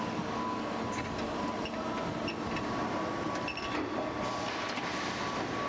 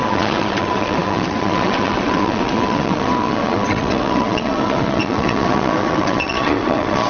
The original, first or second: first